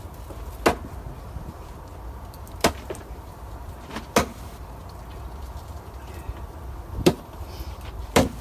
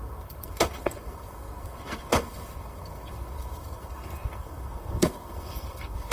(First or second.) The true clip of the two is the first